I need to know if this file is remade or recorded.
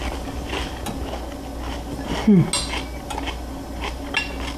recorded